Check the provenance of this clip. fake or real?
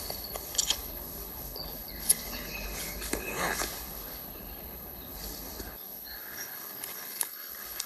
fake